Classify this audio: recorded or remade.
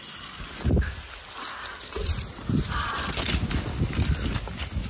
recorded